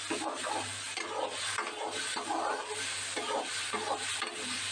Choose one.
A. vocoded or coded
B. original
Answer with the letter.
B